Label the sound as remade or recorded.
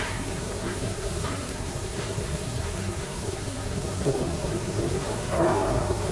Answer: remade